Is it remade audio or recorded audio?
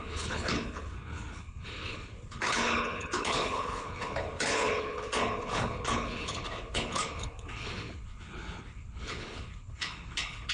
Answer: remade